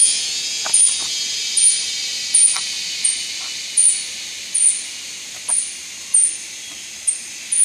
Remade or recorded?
recorded